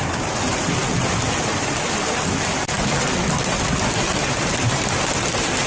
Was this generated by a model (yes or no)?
no